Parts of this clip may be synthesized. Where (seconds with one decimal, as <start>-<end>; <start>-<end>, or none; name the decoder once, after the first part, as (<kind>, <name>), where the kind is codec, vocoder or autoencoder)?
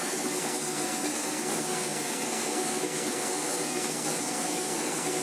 0.0-5.2 (codec, SNAC)